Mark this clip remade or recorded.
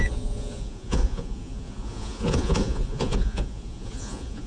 remade